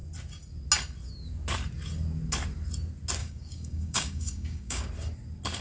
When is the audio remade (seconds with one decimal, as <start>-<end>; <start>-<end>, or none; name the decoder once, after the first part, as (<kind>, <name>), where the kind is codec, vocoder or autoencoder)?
3.2-4.9 (codec, DAC)

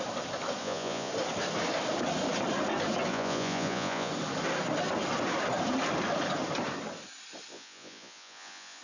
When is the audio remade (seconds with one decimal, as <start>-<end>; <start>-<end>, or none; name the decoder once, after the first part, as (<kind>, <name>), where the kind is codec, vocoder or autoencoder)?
0.6-1.1 (vocoder, Vocos); 3.1-4.1; 7.5-8.8